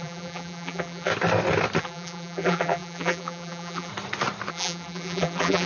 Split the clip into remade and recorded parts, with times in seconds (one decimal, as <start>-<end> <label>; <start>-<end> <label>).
0.0-1.1 remade; 1.1-1.8 recorded; 1.8-3.9 remade; 3.9-4.5 recorded; 4.5-5.7 remade